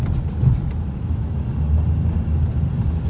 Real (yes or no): yes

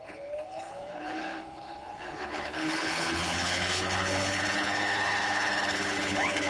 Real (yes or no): no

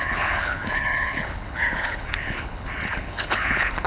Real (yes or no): no